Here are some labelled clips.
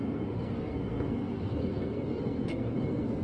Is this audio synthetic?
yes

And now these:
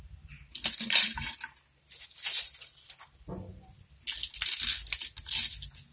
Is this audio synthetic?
no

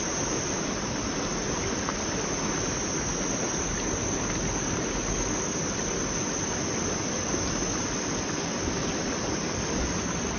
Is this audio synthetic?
no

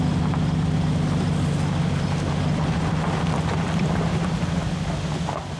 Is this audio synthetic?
no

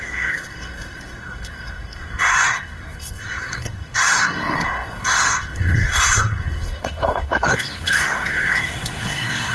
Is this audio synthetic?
yes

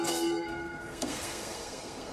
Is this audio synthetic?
yes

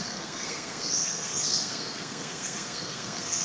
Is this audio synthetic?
yes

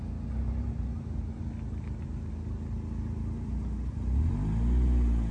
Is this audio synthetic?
no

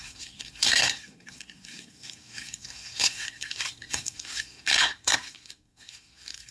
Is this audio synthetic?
yes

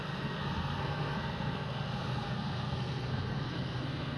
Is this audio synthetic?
yes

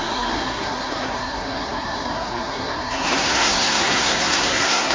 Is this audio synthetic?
yes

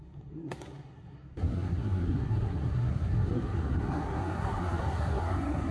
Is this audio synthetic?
yes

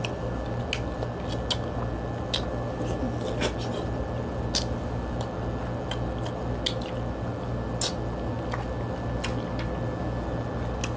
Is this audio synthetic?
no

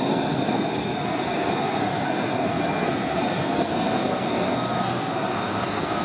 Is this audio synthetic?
yes